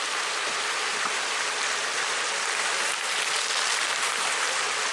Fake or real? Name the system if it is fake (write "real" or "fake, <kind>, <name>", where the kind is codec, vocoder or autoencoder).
real